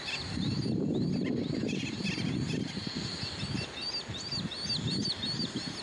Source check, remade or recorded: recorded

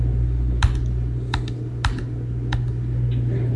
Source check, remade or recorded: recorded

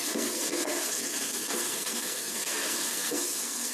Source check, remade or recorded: remade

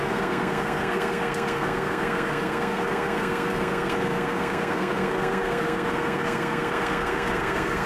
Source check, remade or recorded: remade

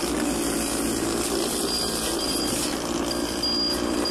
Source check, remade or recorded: recorded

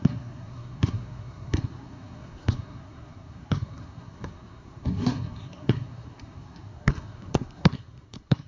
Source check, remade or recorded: remade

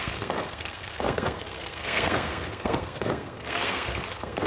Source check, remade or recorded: remade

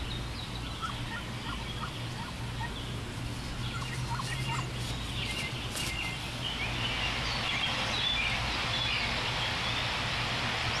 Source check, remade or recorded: recorded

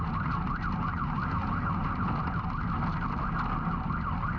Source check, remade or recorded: recorded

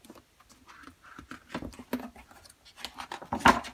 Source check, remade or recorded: recorded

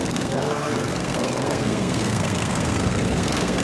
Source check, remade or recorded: remade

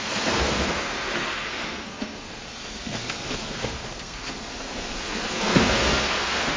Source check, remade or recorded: remade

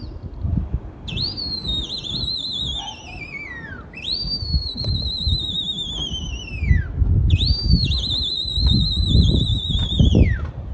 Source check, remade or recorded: recorded